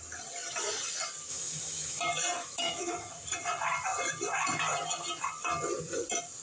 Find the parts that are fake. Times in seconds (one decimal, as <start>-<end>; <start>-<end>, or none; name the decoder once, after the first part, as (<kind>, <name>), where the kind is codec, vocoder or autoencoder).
1.3-2.0 (autoencoder, DAC-VAE); 2.4-3.1